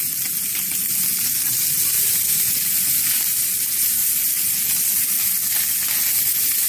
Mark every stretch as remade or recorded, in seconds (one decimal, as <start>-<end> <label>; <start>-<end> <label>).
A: 0.0-6.7 recorded